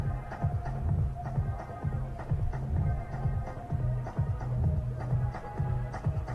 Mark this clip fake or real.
real